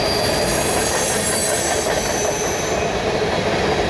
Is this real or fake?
real